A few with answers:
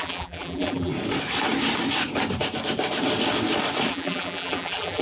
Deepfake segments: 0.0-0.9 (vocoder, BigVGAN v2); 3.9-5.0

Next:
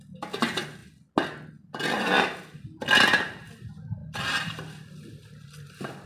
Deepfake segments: 0.0-0.8 (vocoder, BigVGAN v2); 2.8-6.1

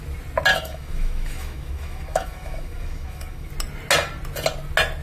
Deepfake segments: 0.5-3.5 (autoencoder, DAC-VAE)

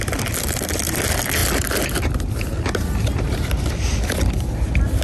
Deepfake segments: none

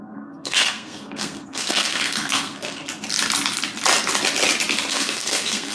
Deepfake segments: 0.0-2.8 (codec, SNAC); 4.9-5.7

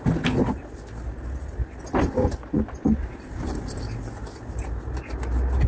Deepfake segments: none